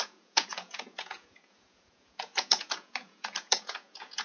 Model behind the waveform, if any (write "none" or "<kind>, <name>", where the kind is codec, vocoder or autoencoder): vocoder, Vocos